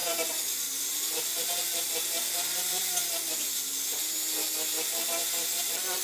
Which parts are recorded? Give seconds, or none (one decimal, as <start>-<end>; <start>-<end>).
0.0-6.0